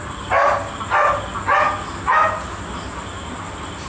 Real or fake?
real